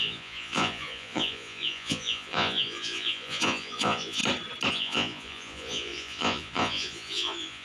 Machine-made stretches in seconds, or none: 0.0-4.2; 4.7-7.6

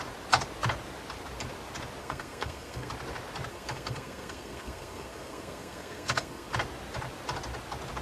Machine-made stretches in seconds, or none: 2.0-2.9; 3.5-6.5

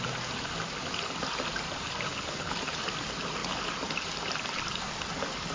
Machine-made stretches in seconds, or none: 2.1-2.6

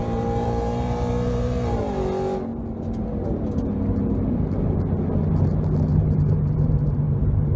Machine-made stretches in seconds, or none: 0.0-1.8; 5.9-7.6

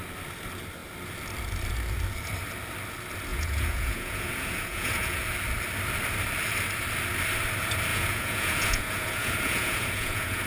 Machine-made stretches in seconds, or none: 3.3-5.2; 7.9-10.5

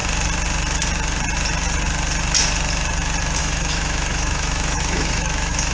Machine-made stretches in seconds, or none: 3.4-5.7

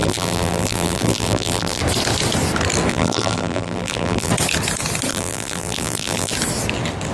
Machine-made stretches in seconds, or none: 0.0-1.8; 2.9-4.3; 5.1-6.3